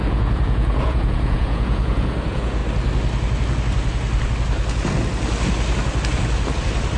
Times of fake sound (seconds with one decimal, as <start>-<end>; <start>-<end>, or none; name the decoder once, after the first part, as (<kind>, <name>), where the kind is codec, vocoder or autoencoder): 0.0-2.6 (vocoder, Vocos)